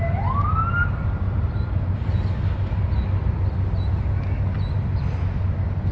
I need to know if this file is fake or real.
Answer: real